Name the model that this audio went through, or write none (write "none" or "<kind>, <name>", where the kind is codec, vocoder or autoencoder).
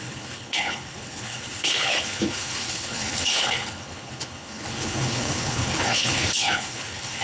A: codec, HILCodec